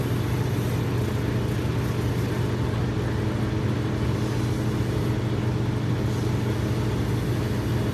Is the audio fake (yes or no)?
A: no